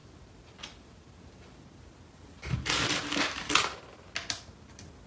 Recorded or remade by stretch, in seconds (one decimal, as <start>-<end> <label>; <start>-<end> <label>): 0.0-5.1 recorded